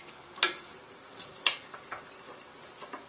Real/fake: fake